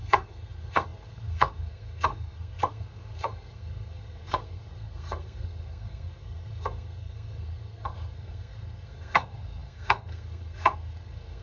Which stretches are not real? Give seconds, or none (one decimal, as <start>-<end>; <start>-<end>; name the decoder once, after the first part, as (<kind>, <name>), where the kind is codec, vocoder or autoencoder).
0.0-11.4 (codec, SNAC)